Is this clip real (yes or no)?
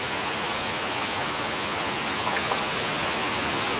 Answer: no